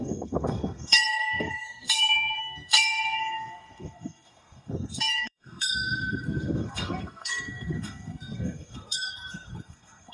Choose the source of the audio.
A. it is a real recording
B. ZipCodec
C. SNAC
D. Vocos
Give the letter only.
C